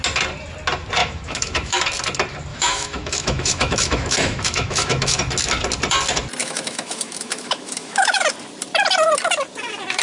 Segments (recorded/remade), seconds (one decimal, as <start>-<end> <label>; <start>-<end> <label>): 0.0-1.0 recorded; 1.0-1.8 remade; 1.8-2.5 recorded; 2.5-5.2 remade; 5.2-6.4 recorded; 6.4-8.3 remade; 8.3-10.0 recorded